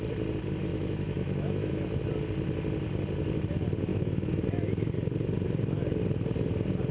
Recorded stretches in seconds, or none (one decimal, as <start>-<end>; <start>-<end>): 0.0-0.7; 2.1-3.9; 4.9-6.9